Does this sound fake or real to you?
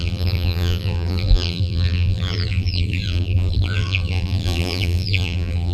fake